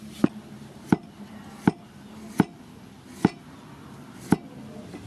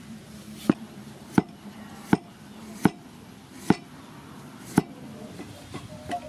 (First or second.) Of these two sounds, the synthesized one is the second